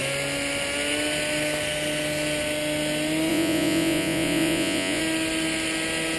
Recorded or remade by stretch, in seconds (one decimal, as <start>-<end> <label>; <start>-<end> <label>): 0.0-3.3 recorded; 3.3-5.0 remade; 5.0-6.2 recorded